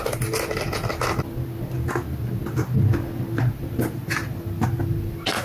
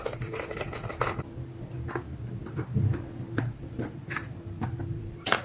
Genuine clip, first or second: first